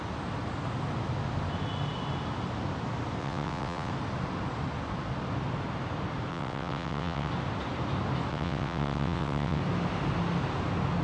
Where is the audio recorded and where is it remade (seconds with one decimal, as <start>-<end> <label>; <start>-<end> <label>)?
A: 0.0-3.2 recorded; 3.2-3.9 remade; 3.9-6.3 recorded; 6.3-7.3 remade; 7.3-8.3 recorded; 8.3-9.6 remade; 9.6-11.0 recorded